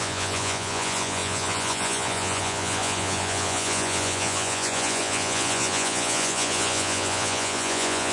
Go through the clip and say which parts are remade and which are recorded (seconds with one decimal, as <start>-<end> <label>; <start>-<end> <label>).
0.0-8.1 remade